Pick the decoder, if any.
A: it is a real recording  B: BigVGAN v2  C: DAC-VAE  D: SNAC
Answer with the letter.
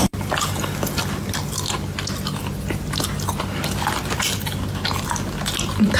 A